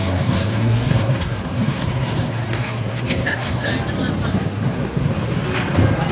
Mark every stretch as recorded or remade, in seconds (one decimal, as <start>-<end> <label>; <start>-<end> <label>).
0.0-3.7 remade; 3.7-4.3 recorded; 4.3-5.1 remade; 5.1-6.1 recorded